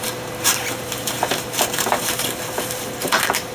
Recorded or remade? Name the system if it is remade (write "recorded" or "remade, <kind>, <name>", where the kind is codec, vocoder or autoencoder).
remade, vocoder, BigVGAN v2